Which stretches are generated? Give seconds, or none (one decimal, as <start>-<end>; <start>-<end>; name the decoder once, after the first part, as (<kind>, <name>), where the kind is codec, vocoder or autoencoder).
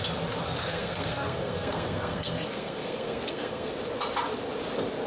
0.6-3.7 (codec, SNAC)